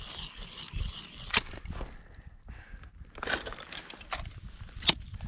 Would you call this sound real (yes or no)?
yes